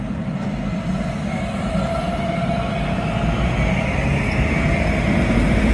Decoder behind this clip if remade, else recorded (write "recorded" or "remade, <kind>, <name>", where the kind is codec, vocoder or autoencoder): recorded